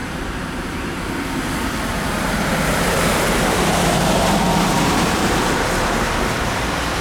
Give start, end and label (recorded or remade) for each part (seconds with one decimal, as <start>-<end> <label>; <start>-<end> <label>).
0.0-1.5 remade; 1.5-2.5 recorded; 2.5-7.0 remade